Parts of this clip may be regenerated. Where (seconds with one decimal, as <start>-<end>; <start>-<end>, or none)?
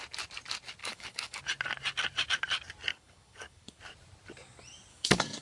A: 0.8-1.4; 2.9-3.8; 4.9-5.4